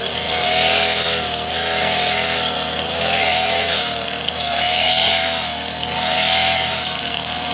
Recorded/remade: remade